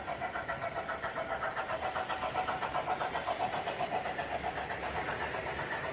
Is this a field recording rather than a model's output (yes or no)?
yes